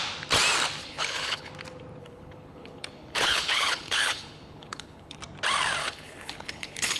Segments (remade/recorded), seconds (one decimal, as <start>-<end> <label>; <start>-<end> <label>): 0.0-0.8 recorded; 0.8-1.5 remade; 1.5-2.0 recorded; 2.0-5.2 remade; 5.2-5.8 recorded; 5.8-7.0 remade